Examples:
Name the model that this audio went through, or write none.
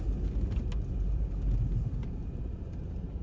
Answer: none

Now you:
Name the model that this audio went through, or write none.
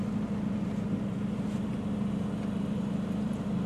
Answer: none